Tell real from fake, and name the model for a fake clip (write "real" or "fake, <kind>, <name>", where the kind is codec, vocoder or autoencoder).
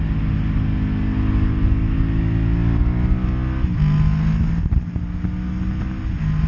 real